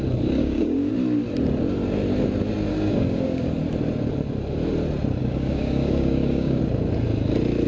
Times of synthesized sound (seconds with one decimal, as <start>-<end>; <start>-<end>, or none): 0.4-0.9; 2.7-3.5; 5.2-6.6